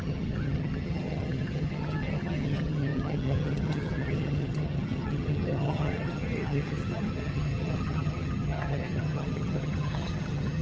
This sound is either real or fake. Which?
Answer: fake